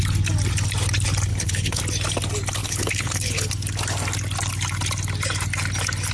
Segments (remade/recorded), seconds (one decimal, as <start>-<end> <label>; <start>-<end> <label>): 0.0-1.3 recorded; 1.3-1.8 remade; 1.8-2.6 recorded; 2.6-3.5 remade; 3.5-6.1 recorded